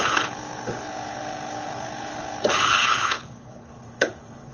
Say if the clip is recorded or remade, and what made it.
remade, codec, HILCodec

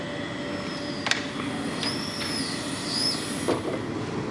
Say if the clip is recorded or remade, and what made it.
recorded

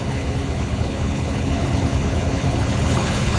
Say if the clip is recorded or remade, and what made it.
remade, codec, HILCodec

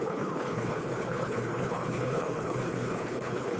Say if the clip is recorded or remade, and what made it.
remade, codec, HILCodec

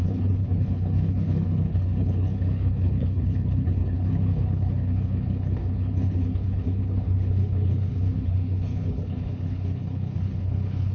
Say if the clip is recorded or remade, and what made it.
remade, codec, HILCodec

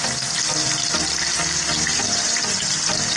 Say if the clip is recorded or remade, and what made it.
recorded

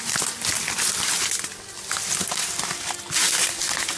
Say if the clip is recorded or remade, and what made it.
recorded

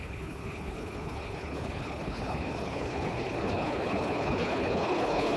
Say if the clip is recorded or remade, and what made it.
remade, codec, HILCodec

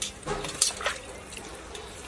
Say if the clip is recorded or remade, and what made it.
recorded